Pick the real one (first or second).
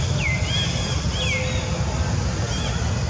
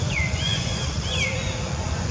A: first